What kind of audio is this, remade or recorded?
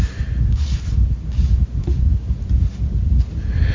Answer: recorded